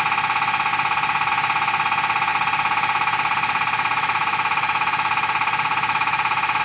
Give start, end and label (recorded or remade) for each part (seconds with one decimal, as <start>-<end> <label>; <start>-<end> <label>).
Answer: 0.0-0.7 recorded; 0.7-1.3 remade; 1.3-2.3 recorded; 2.3-6.6 remade